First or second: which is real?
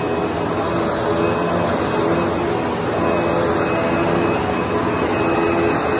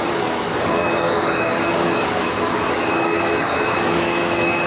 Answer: first